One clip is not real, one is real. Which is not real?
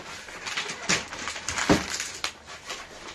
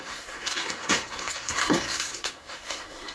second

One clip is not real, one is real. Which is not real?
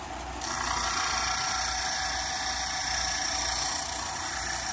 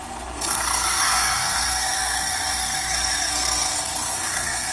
second